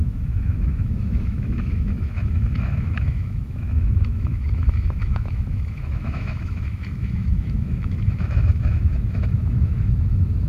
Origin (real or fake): fake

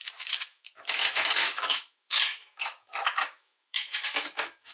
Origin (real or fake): fake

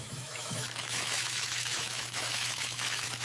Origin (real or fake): fake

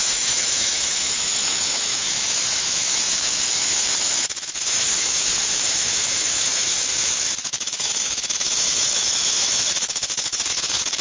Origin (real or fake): fake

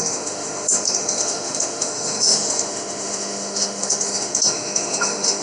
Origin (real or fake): fake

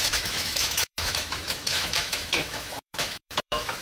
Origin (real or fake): fake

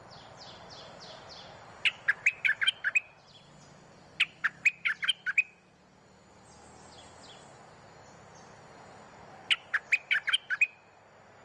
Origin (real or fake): real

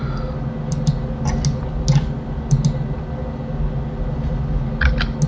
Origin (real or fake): real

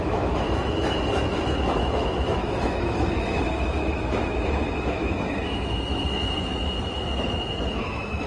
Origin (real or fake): fake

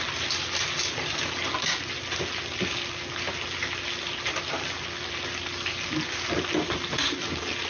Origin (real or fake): real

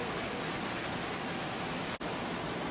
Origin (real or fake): real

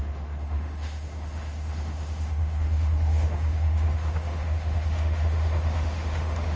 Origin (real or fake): fake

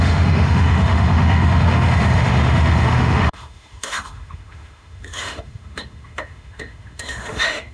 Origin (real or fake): fake